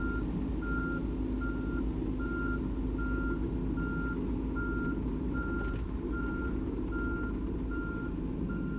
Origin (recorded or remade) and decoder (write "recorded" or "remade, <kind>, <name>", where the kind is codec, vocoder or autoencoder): recorded